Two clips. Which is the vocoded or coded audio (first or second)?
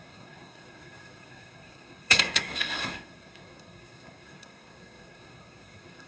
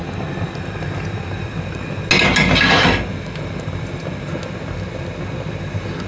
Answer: first